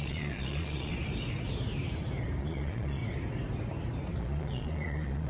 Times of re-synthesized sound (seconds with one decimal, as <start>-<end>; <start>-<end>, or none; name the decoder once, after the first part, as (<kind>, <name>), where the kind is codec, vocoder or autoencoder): 0.0-0.9 (vocoder, Vocos); 2.4-3.0; 4.2-5.3